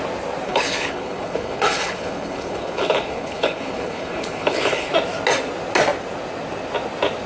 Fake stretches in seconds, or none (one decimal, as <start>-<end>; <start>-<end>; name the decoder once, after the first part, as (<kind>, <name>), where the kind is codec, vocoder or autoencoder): 0.5-4.9 (codec, HILCodec)